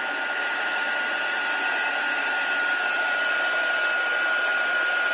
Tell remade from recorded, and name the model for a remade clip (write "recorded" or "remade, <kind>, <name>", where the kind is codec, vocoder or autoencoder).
recorded